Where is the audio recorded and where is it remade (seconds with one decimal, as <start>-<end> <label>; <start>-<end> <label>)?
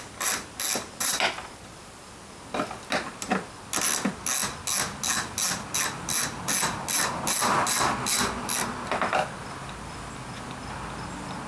0.0-1.1 recorded; 1.1-2.2 remade; 2.2-11.5 recorded